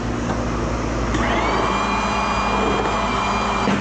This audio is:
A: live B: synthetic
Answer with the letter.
A